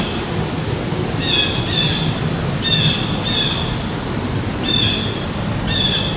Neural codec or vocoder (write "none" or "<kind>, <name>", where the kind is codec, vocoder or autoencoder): none